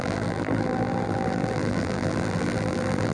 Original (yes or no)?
no